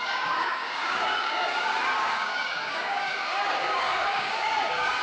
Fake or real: fake